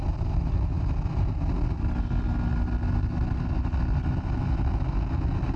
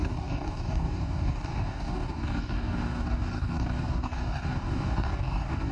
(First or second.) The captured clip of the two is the first